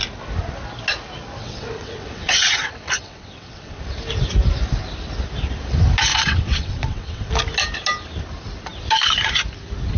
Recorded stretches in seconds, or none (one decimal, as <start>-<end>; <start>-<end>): 0.0-1.4; 3.8-6.1; 7.3-10.0